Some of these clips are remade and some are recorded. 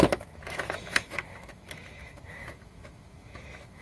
remade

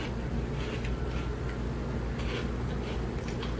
recorded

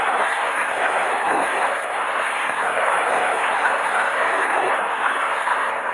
remade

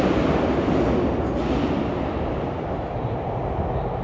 recorded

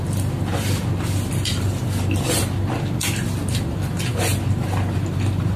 recorded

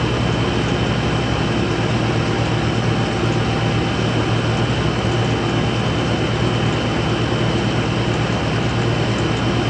recorded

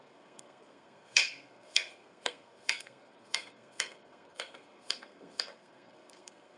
remade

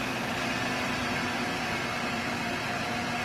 remade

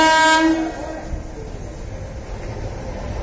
recorded